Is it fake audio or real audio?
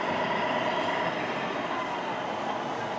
real